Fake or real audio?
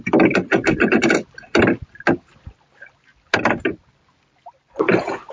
real